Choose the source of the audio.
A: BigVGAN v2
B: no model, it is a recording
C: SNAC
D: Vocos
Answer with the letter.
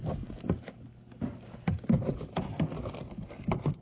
B